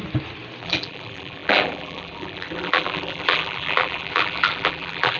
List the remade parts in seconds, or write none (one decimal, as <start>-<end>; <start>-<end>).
0.6-5.2